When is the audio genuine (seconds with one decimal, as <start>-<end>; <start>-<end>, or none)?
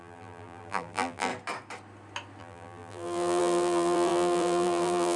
1.3-2.4